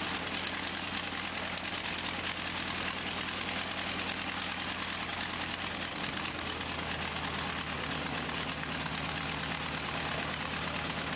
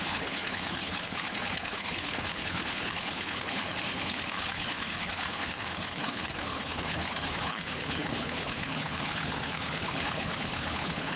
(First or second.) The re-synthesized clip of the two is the second